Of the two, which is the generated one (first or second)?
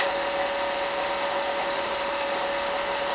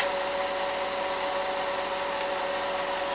first